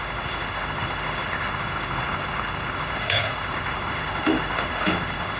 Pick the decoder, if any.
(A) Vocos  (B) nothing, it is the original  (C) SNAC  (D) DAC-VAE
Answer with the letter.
D